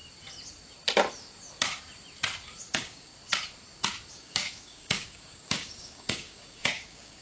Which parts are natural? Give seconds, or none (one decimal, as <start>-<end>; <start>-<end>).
0.0-2.7; 3.1-4.1